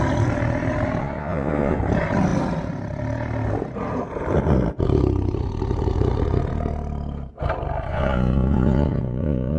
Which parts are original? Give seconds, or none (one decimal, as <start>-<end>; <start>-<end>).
0.0-1.0; 1.8-7.9